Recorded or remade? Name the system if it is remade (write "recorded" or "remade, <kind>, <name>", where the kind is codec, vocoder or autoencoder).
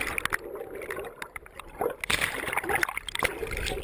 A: recorded